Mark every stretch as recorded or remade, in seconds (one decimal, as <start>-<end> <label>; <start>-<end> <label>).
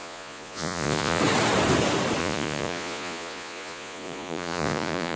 0.0-1.2 remade; 1.2-2.2 recorded; 2.2-5.2 remade